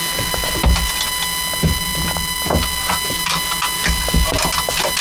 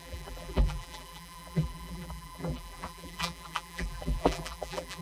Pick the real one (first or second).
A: first